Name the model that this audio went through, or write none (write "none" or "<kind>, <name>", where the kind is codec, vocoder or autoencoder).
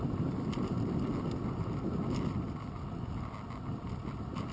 none